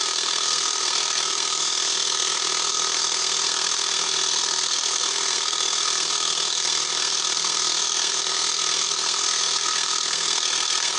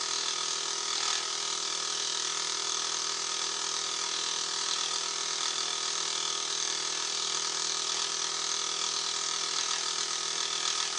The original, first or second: second